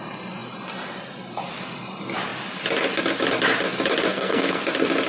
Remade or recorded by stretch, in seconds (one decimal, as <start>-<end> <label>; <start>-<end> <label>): 0.0-4.1 recorded; 4.1-4.6 remade; 4.6-5.1 recorded